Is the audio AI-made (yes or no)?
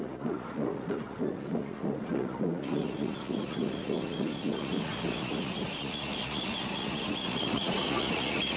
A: yes